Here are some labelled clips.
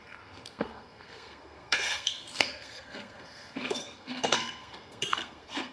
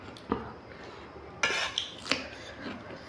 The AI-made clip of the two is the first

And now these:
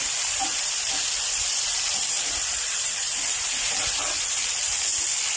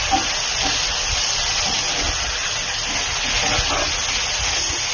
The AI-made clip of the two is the first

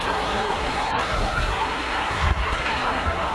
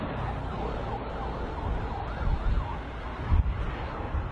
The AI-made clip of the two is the first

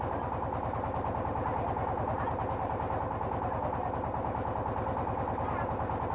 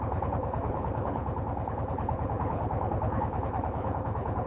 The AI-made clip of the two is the second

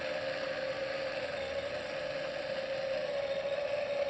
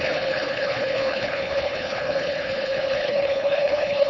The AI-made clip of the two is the second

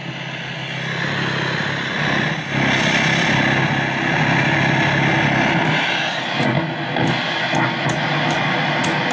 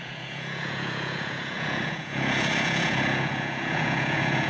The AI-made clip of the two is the second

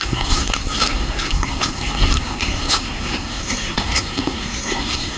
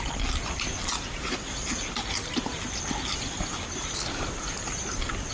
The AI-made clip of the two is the first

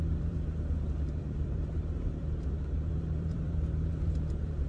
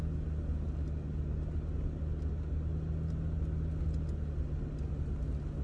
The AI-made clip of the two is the first